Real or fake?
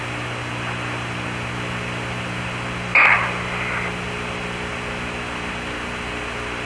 real